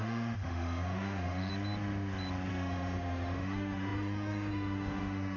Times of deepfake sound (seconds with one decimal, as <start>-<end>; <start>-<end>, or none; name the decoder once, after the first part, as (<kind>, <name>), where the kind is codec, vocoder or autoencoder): 0.0-1.5 (autoencoder, DAC-VAE); 2.5-5.4

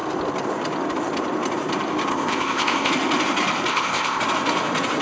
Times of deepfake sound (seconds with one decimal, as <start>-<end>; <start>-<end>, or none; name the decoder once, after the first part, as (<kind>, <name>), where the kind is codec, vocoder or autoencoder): 2.1-2.9 (codec, ZipCodec); 3.7-4.2

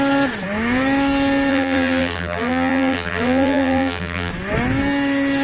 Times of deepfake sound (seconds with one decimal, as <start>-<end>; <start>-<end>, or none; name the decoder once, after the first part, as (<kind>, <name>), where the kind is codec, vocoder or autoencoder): 1.5-4.3 (vocoder, BigVGAN v2)

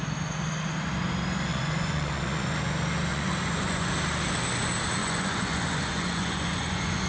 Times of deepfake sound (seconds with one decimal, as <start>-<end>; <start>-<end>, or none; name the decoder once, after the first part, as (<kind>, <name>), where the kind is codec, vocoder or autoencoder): 1.5-2.6 (vocoder, Vocos); 3.1-3.9; 5.0-7.1